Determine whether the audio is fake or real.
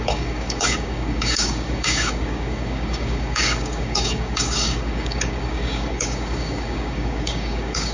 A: fake